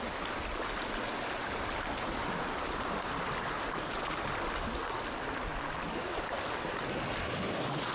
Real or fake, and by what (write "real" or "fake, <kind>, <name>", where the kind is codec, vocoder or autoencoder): real